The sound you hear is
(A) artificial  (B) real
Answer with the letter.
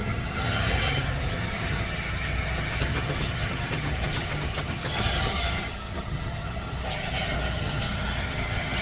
A